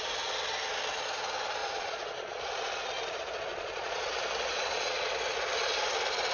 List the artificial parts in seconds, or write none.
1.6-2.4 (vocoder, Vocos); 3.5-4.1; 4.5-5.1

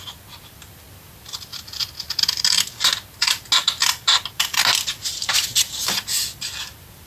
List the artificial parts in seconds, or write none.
none

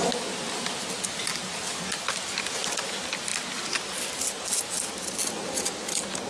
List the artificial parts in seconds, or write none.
none

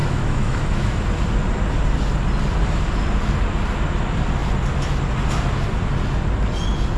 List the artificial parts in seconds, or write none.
0.0-1.0 (autoencoder, DAC-VAE)

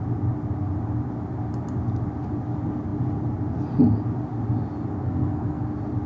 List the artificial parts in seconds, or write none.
5.0-5.6 (codec, SNAC)

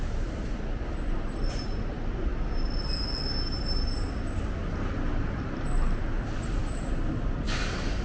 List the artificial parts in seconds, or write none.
0.0-2.3 (vocoder, BigVGAN v2); 6.1-6.6; 7.4-8.0